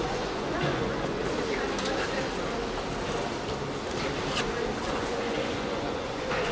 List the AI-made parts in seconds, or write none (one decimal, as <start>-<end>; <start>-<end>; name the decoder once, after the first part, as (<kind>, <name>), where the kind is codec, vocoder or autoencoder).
0.0-1.2 (vocoder, Vocos); 4.9-6.5

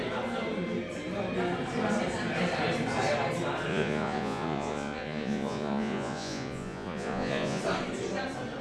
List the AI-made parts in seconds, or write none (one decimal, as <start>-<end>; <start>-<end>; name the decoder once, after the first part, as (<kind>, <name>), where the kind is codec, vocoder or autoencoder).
3.7-7.6 (vocoder, Vocos)